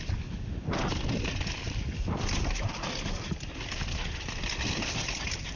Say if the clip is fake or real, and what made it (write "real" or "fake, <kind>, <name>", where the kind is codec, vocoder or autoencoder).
real